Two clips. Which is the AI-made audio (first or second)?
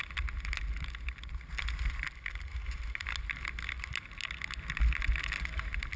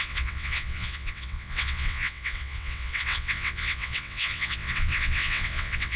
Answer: second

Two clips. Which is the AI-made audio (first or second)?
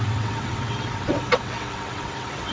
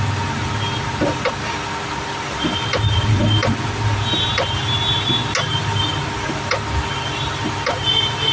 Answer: first